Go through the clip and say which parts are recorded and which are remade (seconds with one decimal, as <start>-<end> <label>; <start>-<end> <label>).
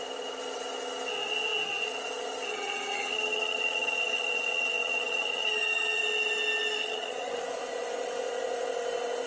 0.0-2.5 recorded; 2.5-6.0 remade; 6.0-6.8 recorded; 6.8-7.4 remade; 7.4-9.3 recorded